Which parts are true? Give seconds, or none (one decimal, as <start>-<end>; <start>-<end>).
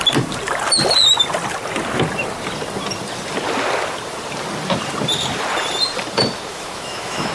0.0-6.5